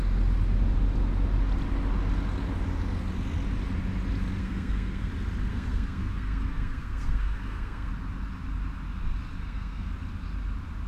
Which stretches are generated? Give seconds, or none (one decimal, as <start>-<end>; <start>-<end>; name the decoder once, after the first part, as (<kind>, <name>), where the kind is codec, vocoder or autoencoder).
4.4-5.1 (codec, SNAC); 5.5-7.9; 9.4-9.9

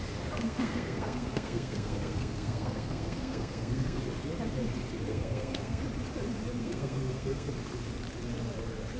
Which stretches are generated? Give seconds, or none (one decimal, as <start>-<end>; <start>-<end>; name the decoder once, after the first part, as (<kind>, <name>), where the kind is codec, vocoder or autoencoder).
0.4-4.0 (codec, SNAC); 5.1-5.8; 6.6-7.5

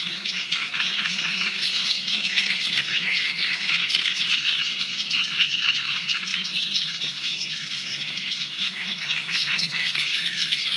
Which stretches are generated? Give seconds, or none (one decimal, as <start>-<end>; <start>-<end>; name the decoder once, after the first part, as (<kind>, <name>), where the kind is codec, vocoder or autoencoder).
0.0-10.8 (codec, SNAC)

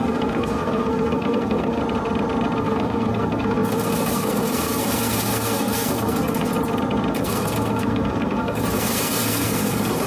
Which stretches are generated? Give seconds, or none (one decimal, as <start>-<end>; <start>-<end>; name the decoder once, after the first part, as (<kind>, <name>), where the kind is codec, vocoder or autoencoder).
0.0-1.8 (codec, SNAC); 2.6-6.5; 7.1-10.1

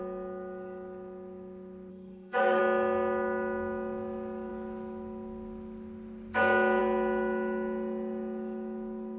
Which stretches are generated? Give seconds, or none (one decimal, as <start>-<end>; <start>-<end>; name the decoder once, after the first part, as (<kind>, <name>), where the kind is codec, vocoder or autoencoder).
1.9-2.6 (codec, SNAC)

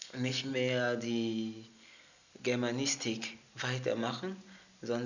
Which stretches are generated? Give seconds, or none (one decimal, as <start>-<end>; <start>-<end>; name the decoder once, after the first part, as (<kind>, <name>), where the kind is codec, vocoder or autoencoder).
0.0-0.5 (codec, SNAC); 1.7-2.3

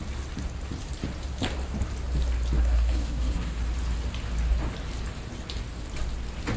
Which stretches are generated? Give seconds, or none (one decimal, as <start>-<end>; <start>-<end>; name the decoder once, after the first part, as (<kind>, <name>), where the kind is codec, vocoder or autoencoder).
2.6-3.6 (codec, SNAC)

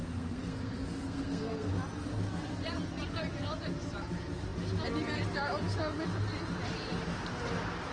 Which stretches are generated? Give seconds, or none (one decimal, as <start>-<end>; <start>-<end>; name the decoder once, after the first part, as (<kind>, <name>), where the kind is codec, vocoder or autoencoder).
0.0-1.7 (codec, SNAC)